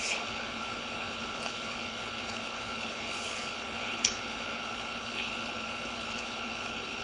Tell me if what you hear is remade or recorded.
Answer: remade